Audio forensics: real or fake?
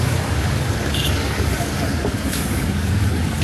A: fake